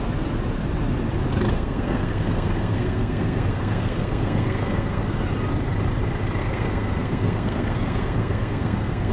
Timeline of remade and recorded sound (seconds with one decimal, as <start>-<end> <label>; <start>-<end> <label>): 0.0-1.5 recorded; 1.5-5.2 remade; 5.2-6.4 recorded; 6.4-9.1 remade